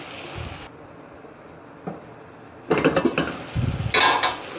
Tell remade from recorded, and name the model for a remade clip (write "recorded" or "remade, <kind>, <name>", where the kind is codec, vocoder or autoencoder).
recorded